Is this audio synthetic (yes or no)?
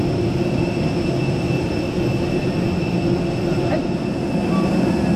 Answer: no